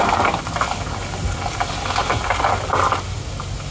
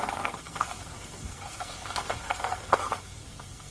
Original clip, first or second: first